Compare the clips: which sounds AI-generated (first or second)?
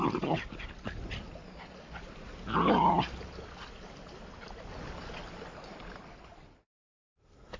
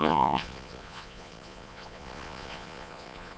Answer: second